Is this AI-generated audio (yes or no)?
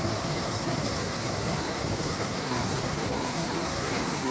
yes